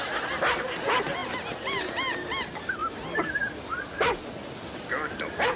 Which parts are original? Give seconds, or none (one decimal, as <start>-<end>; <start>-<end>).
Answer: 0.0-5.6